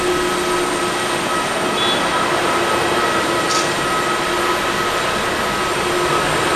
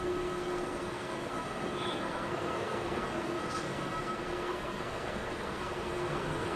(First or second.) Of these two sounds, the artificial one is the second